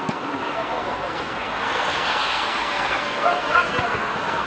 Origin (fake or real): fake